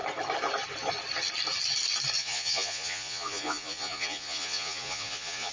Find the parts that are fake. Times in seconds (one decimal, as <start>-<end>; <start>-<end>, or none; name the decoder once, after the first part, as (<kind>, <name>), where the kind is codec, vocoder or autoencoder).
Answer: 2.2-5.5 (vocoder, Vocos)